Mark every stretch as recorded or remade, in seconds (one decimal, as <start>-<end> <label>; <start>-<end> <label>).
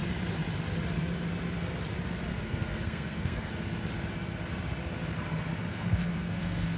0.0-2.3 recorded; 2.3-3.5 remade; 3.5-5.7 recorded; 5.7-6.8 remade